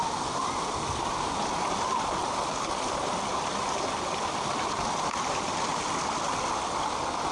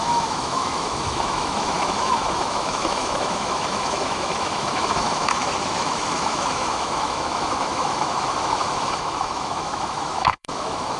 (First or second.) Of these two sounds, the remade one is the second